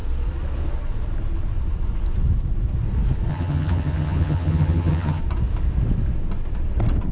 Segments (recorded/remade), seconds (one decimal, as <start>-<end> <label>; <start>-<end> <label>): 0.0-3.3 recorded; 3.3-5.2 remade; 5.2-7.1 recorded